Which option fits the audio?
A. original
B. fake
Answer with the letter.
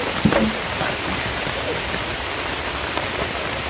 B